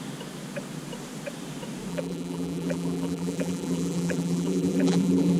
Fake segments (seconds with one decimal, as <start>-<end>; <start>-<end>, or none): 1.9-5.4

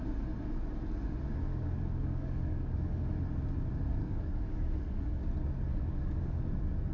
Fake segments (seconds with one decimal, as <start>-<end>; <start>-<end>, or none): 1.5-3.1; 4.0-5.2; 5.7-6.4